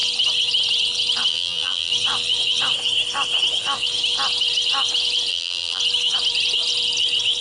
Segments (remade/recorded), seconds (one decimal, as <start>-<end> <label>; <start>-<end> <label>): 0.0-1.3 recorded; 1.3-1.9 remade; 1.9-5.3 recorded; 5.3-5.8 remade; 5.8-7.4 recorded